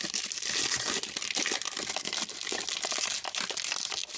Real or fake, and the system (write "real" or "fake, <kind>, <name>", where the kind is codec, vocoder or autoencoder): real